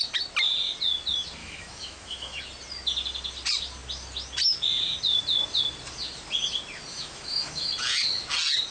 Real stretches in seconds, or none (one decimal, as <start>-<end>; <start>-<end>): 0.0-1.4; 2.4-6.9; 7.7-8.7